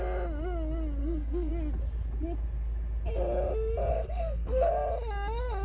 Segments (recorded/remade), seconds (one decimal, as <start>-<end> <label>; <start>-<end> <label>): 0.0-1.0 recorded; 1.0-1.5 remade; 1.5-3.9 recorded; 3.9-4.7 remade; 4.7-5.6 recorded